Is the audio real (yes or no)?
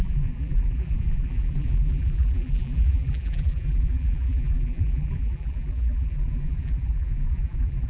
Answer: no